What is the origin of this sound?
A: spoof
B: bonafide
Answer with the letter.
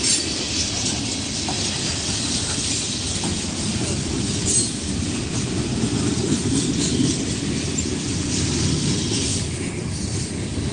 B